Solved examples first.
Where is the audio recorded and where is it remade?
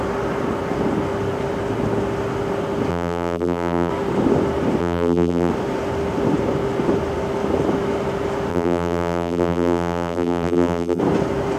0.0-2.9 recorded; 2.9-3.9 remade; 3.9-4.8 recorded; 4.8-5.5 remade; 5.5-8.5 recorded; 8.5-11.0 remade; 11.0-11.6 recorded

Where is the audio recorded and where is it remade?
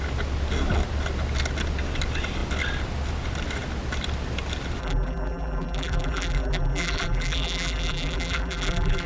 0.0-4.8 recorded; 4.8-9.1 remade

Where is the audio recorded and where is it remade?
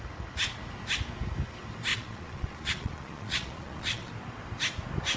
0.0-1.9 recorded; 1.9-4.1 remade; 4.1-5.2 recorded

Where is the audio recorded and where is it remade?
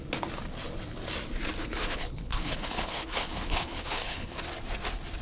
0.0-1.6 recorded; 1.6-4.4 remade; 4.4-5.2 recorded